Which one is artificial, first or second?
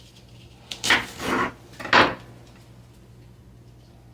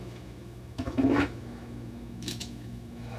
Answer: second